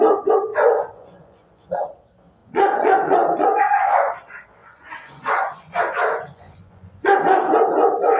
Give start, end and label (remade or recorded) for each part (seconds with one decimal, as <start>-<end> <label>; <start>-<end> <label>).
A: 0.0-0.5 recorded; 0.5-1.8 remade; 1.8-2.4 recorded; 2.4-4.1 remade; 4.1-4.6 recorded; 4.6-7.2 remade; 7.2-8.2 recorded